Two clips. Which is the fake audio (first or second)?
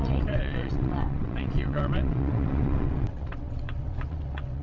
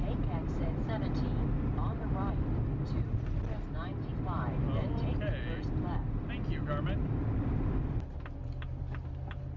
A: first